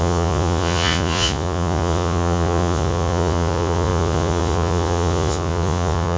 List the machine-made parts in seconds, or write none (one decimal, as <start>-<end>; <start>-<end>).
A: 0.0-6.2